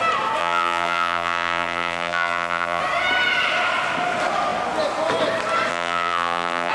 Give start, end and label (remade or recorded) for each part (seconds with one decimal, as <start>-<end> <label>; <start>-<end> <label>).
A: 0.0-0.4 recorded; 0.4-2.8 remade; 2.8-5.7 recorded; 5.7-6.7 remade

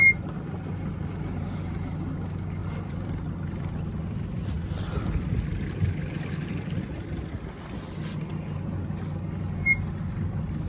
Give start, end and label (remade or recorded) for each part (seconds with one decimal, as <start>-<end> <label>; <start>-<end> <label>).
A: 0.0-2.6 recorded; 2.6-7.3 remade; 7.3-10.7 recorded